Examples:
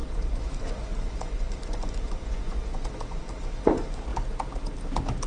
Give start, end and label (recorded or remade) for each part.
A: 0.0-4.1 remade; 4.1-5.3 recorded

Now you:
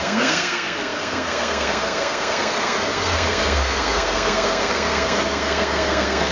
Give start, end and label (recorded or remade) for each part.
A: 0.0-6.3 remade

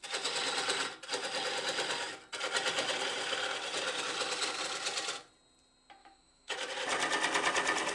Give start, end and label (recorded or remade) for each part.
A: 0.0-6.0 recorded; 6.0-6.7 remade; 6.7-7.9 recorded